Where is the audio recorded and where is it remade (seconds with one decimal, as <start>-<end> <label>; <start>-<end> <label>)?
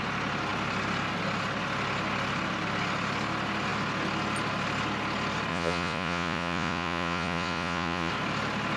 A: 0.0-5.5 recorded; 5.5-8.1 remade; 8.1-8.8 recorded